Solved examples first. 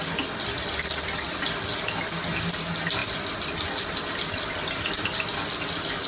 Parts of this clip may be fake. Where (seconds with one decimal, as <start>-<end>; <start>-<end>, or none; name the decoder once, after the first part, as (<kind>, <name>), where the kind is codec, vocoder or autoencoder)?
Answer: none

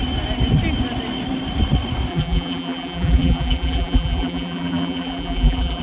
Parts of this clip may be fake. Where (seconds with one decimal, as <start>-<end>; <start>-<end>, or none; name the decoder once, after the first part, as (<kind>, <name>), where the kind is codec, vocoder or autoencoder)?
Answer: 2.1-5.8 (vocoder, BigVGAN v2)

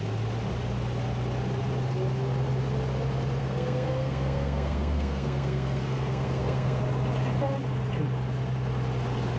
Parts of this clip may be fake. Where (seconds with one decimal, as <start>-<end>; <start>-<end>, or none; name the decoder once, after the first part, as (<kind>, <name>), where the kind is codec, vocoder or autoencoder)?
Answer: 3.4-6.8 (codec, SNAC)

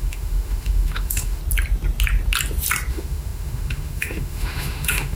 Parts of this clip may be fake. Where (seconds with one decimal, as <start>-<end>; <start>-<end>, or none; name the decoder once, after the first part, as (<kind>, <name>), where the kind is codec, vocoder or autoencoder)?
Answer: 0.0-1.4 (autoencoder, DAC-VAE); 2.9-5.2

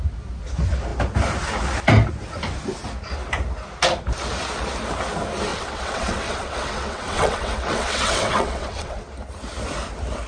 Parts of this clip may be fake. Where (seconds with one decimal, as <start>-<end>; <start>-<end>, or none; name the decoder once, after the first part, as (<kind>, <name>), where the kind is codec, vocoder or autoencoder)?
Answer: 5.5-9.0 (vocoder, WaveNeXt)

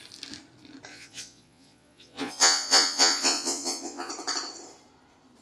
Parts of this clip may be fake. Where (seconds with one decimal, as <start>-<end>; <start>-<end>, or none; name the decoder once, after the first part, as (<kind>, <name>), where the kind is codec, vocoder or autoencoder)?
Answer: 0.9-4.1 (vocoder, Vocos)

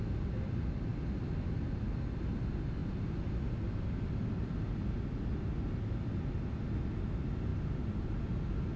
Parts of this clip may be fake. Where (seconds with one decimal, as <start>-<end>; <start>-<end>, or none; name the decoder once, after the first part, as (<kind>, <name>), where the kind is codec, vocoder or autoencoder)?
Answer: none